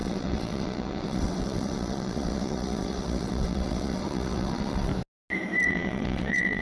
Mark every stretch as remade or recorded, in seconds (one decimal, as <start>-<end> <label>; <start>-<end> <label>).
0.0-4.9 remade; 4.9-5.7 recorded; 5.7-6.6 remade